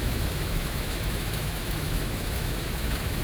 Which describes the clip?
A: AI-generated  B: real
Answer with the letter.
A